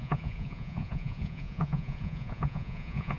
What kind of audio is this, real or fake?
fake